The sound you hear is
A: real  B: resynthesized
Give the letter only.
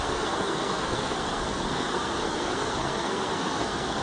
B